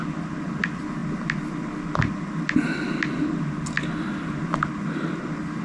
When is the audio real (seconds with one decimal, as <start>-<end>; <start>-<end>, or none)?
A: 0.0-5.6